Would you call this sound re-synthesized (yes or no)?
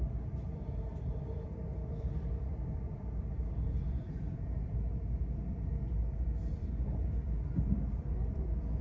yes